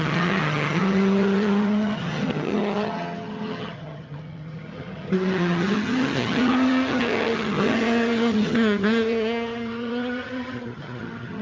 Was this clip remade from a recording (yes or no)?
yes